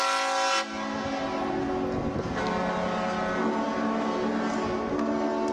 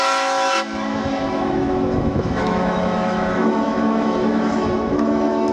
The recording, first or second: first